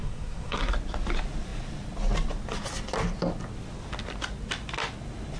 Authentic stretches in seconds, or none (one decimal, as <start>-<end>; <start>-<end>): 0.7-5.4